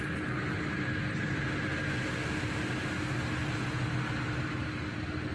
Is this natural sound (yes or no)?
yes